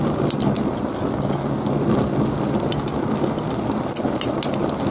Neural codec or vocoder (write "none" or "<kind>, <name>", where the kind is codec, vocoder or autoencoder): none